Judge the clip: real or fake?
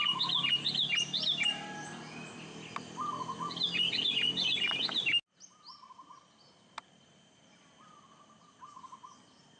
real